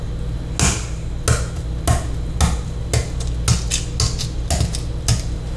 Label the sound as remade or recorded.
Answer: recorded